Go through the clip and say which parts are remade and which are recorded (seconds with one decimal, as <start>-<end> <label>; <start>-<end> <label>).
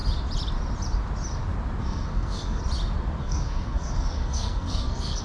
0.0-1.8 recorded; 1.8-2.6 remade; 2.6-3.2 recorded; 3.2-5.2 remade